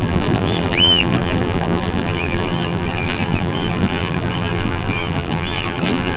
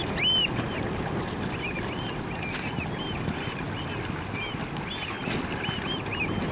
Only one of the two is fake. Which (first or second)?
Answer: first